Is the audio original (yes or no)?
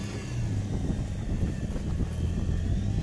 yes